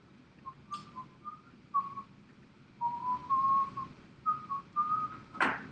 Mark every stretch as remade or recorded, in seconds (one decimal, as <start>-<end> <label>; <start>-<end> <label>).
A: 0.0-5.7 recorded